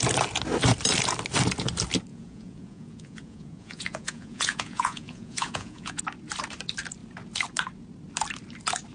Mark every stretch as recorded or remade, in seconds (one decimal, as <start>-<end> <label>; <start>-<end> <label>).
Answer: 0.0-2.1 recorded; 2.1-6.0 remade; 6.0-8.9 recorded